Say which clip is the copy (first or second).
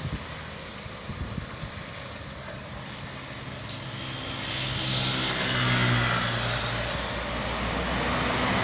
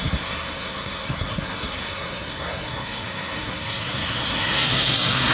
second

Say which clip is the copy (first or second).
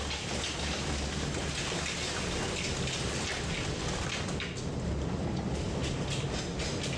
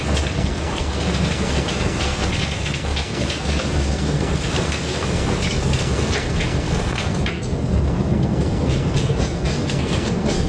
second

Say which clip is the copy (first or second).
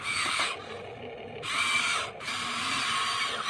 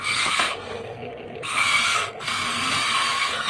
second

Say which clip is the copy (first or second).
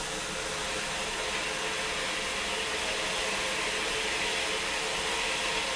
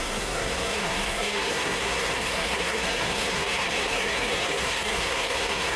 second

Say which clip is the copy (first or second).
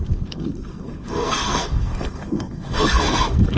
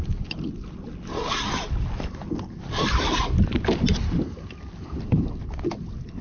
first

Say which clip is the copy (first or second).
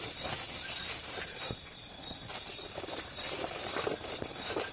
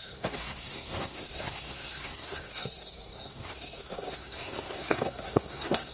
second